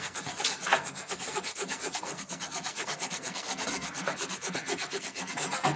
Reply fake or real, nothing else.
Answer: fake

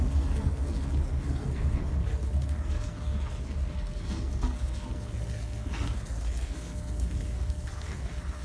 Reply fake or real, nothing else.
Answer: fake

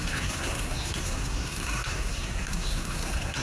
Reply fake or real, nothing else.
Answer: fake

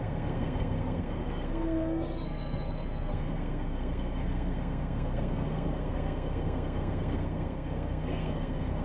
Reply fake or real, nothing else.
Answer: fake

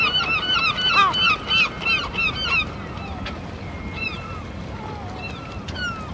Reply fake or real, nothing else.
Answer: real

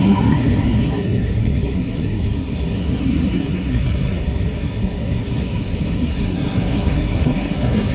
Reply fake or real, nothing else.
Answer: fake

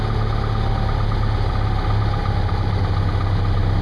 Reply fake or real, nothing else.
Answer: real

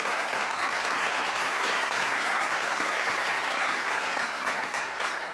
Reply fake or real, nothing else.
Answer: fake